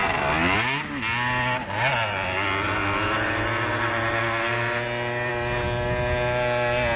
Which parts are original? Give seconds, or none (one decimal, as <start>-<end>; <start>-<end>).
0.0-7.0